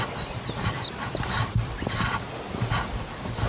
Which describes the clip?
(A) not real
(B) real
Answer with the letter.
B